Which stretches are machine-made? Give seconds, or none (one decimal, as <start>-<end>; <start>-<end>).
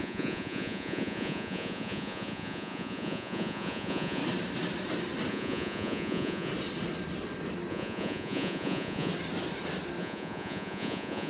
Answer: 0.0-4.2; 5.3-6.5; 7.7-9.1; 10.0-11.3